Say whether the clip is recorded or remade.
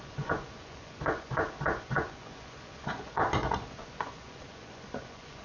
remade